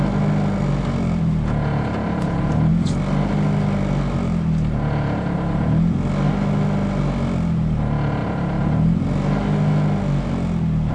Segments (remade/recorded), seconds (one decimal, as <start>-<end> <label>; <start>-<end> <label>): 0.0-10.9 recorded